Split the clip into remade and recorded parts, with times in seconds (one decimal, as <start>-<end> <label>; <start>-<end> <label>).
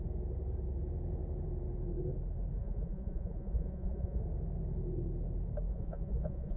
0.0-2.6 recorded; 2.6-4.2 remade; 4.2-5.7 recorded; 5.7-6.6 remade